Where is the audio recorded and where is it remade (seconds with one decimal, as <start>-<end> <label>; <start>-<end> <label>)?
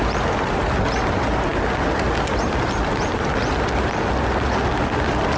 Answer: 0.0-5.4 recorded